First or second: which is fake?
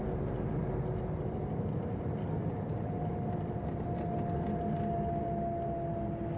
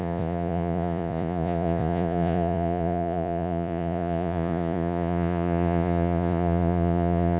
second